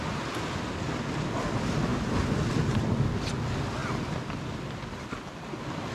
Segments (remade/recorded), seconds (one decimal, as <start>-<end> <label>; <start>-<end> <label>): 0.0-5.9 recorded